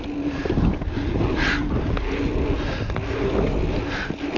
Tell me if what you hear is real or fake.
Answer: real